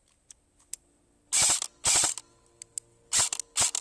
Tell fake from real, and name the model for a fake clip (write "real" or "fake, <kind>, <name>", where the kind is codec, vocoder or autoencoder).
real